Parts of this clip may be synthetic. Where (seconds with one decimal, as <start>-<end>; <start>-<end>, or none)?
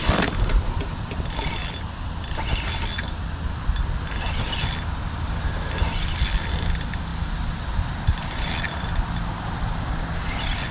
none